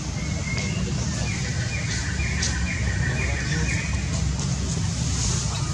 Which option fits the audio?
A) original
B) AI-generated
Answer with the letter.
A